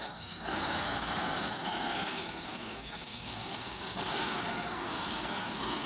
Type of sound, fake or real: fake